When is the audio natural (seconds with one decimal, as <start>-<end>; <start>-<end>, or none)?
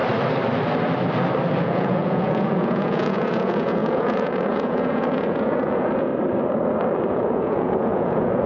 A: 0.0-1.6; 6.1-7.1